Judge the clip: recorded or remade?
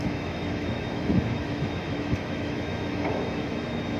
remade